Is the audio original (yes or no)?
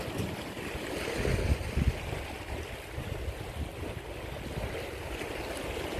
yes